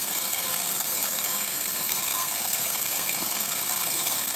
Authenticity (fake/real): fake